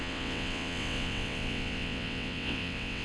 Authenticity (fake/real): fake